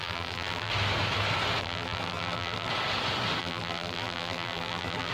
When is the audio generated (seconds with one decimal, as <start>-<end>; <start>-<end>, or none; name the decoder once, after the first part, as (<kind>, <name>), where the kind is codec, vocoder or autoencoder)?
0.0-0.7 (vocoder, BigVGAN v2); 1.6-2.7; 3.4-5.1